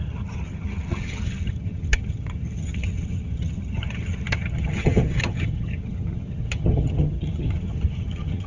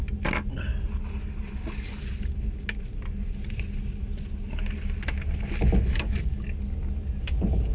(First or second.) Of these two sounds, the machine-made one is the first